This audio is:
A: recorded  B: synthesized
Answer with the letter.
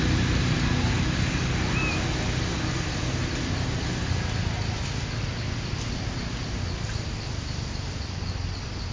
A